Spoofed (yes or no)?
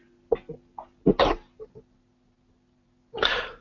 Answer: no